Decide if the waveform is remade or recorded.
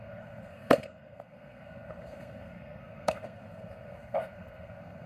remade